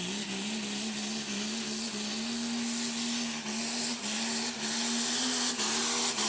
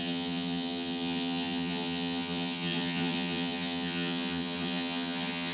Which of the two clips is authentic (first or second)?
first